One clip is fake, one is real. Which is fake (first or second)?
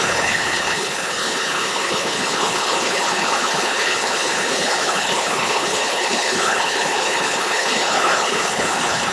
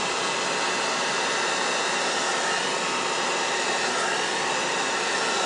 first